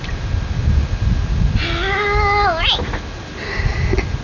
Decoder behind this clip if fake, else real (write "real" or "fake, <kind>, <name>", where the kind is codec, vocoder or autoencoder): real